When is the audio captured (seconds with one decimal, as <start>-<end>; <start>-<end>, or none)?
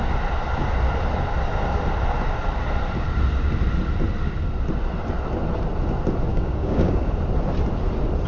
0.0-6.3; 7.1-8.3